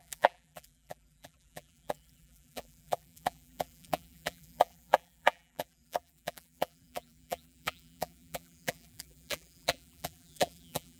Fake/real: fake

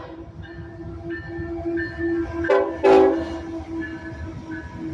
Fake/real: real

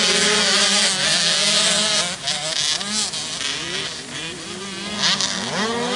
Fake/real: real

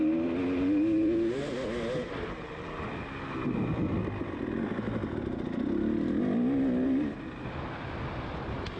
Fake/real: real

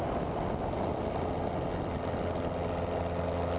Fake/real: real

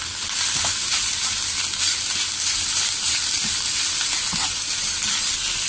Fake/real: real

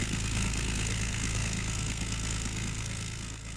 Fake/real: fake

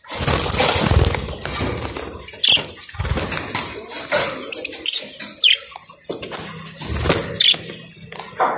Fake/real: real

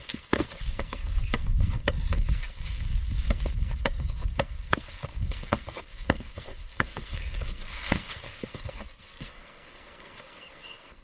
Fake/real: fake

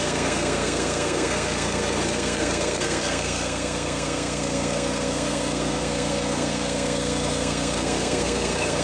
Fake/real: fake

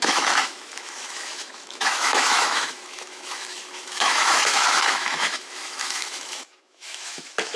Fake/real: fake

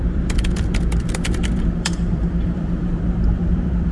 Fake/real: fake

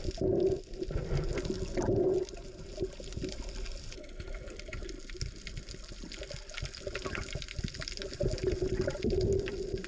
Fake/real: real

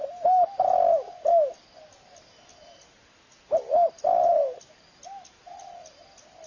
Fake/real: real